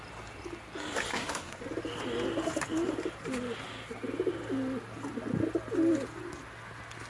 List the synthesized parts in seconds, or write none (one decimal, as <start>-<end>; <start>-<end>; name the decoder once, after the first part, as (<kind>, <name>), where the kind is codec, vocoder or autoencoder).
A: 1.1-1.6 (codec, SNAC)